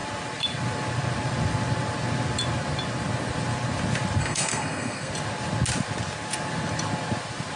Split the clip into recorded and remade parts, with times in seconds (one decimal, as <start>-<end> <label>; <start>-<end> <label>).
0.0-4.2 recorded; 4.2-5.1 remade; 5.1-7.6 recorded